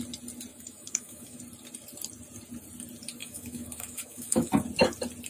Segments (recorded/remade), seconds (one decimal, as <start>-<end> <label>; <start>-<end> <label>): 0.0-0.5 recorded; 0.5-1.4 remade; 1.4-3.2 recorded; 3.2-4.5 remade; 4.5-5.3 recorded